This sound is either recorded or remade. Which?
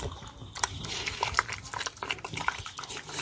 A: recorded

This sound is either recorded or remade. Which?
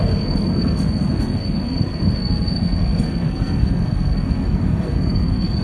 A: remade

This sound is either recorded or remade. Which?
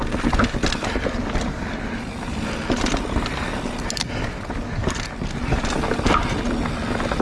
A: recorded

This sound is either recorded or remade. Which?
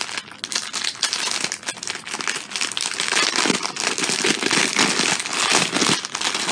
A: recorded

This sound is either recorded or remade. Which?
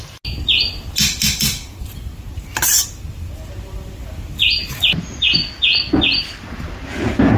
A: recorded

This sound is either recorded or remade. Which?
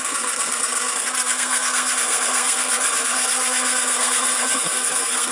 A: remade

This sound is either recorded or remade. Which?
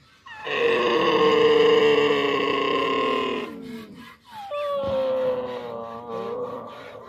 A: recorded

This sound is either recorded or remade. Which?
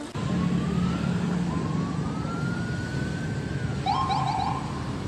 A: recorded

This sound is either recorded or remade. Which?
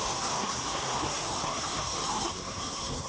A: remade